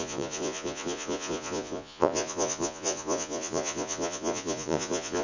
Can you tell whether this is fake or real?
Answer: fake